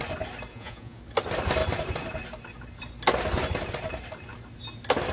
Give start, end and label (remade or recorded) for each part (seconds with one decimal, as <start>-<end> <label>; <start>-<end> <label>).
0.0-0.5 recorded; 0.5-1.0 remade; 1.0-5.1 recorded